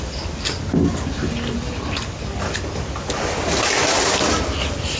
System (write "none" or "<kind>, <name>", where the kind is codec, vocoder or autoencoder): none